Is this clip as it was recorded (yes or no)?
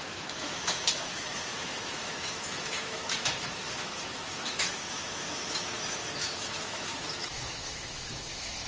no